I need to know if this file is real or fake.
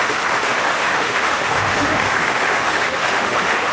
fake